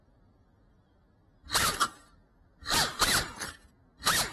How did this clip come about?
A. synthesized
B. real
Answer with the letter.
A